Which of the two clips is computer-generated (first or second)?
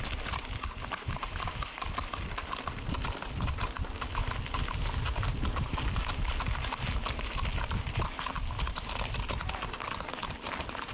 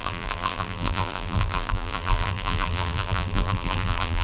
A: second